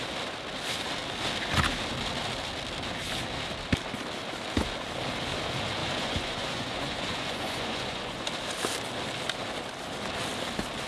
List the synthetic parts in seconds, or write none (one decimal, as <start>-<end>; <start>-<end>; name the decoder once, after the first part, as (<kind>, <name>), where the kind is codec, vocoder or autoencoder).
5.8-8.3 (vocoder, Vocos)